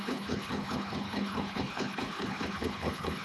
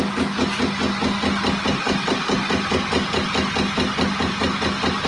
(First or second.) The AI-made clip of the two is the first